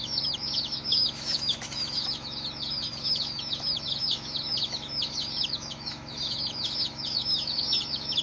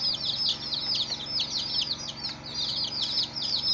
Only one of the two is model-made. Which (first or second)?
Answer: first